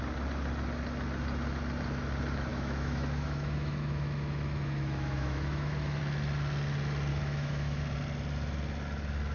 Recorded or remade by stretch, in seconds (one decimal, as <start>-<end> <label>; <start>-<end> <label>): 0.0-2.5 recorded; 2.5-6.0 remade; 6.0-7.1 recorded; 7.1-7.8 remade; 7.8-9.3 recorded